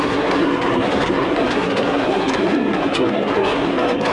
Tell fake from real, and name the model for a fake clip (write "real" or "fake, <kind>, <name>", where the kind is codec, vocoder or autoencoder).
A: fake, codec, SNAC